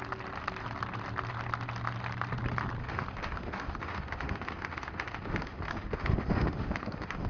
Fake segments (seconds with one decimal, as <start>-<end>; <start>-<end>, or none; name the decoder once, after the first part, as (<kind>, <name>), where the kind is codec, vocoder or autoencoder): 2.8-7.3 (autoencoder, DAC-VAE)